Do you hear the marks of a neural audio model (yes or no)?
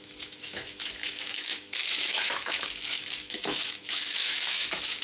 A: yes